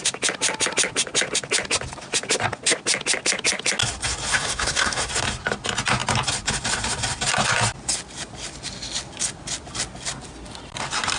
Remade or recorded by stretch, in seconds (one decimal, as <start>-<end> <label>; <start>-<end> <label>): 0.0-4.3 recorded; 4.3-5.1 remade; 5.1-11.2 recorded